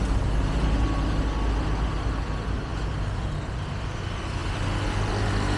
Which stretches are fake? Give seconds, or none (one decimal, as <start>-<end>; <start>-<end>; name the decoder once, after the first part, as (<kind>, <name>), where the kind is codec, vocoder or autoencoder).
none